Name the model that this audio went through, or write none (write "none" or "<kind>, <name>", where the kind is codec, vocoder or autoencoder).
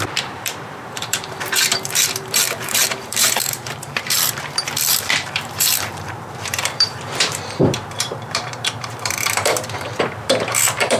vocoder, BigVGAN v2